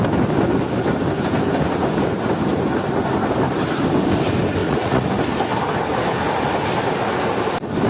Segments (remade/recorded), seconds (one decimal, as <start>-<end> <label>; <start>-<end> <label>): 0.0-4.6 recorded; 4.6-5.1 remade; 5.1-7.9 recorded

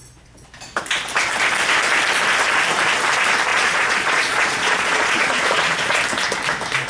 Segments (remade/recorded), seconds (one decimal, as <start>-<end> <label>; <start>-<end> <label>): 0.0-3.5 recorded; 3.5-6.0 remade; 6.0-6.9 recorded

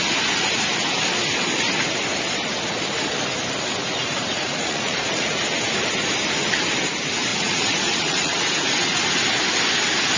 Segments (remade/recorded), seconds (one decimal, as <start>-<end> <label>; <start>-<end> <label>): 0.0-4.5 recorded; 4.5-5.4 remade; 5.4-7.3 recorded; 7.3-8.3 remade; 8.3-10.2 recorded

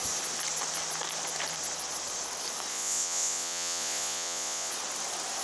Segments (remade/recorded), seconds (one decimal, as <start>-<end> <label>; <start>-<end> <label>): 0.0-2.7 recorded; 2.7-4.7 remade; 4.7-5.4 recorded

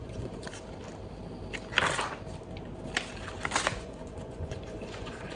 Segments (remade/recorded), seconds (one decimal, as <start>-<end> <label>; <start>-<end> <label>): 0.0-0.5 remade; 0.5-3.7 recorded; 3.7-5.4 remade